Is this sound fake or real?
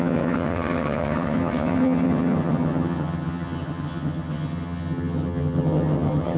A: fake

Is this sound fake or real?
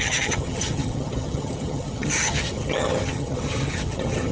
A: fake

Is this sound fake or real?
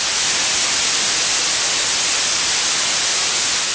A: real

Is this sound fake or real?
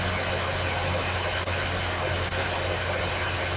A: real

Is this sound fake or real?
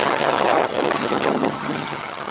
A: fake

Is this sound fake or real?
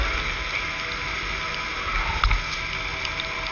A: real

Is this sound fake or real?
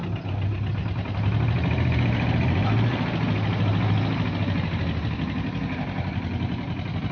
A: real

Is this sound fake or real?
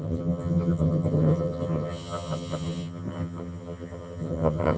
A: fake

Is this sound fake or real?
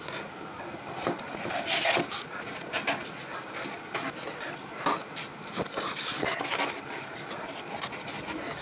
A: real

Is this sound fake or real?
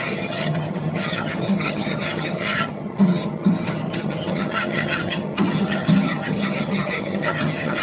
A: fake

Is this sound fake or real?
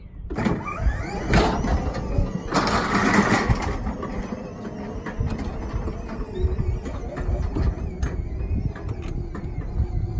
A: real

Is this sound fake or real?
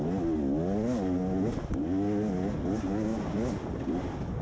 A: real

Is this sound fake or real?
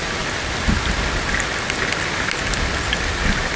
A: real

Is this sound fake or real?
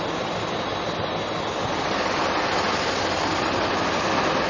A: real